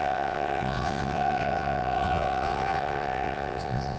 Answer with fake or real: fake